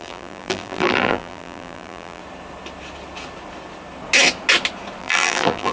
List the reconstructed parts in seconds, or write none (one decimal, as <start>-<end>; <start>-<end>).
0.0-2.2; 5.0-5.7